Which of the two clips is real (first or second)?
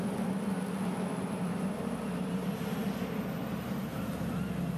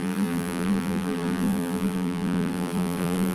first